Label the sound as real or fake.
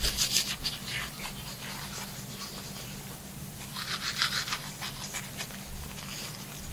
real